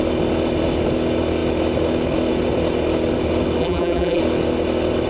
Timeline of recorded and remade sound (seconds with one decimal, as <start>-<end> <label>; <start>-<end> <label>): 0.0-3.6 recorded; 3.6-4.2 remade; 4.2-5.1 recorded